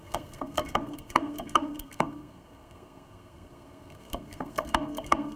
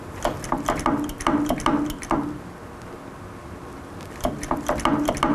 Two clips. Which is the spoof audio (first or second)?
first